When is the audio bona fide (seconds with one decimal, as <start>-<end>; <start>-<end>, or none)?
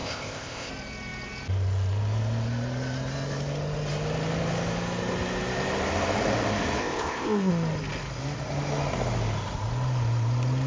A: 0.7-6.8; 7.5-10.7